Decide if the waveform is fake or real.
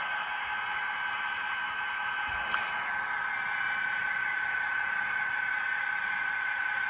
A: real